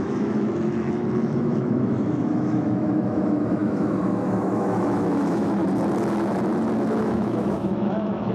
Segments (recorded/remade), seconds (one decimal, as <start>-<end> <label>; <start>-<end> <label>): 0.0-5.6 remade; 5.6-7.0 recorded; 7.0-8.3 remade